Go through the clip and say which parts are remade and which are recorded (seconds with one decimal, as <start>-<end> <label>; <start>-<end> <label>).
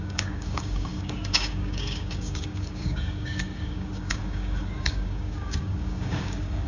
0.0-6.7 remade